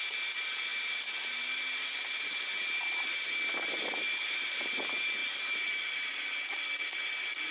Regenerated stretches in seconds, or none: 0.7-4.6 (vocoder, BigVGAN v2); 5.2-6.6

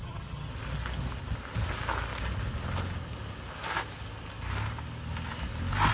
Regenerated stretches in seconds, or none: 0.0-0.5 (vocoder, HiFi-GAN)

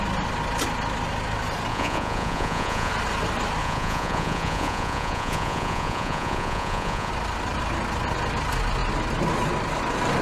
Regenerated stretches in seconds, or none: 1.7-2.9 (vocoder, Vocos); 3.6-7.1